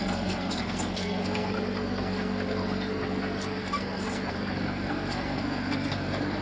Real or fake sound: fake